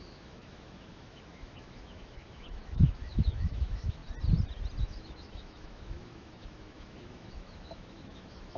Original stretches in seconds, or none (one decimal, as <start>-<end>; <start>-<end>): 4.0-4.8